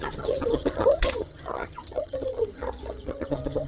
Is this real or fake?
fake